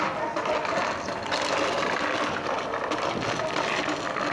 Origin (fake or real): real